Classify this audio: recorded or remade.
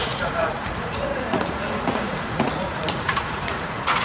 remade